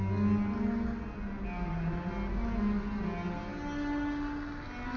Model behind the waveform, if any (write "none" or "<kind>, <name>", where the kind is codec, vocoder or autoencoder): none